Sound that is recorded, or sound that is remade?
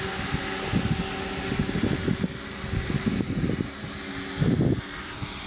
recorded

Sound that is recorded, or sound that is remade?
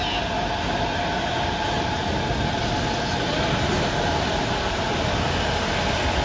recorded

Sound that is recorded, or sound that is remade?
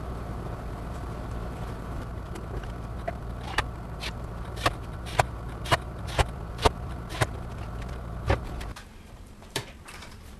remade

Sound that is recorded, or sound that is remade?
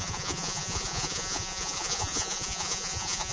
remade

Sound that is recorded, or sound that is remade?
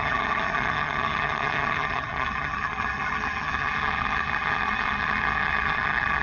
remade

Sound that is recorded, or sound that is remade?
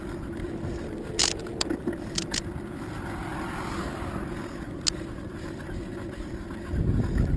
recorded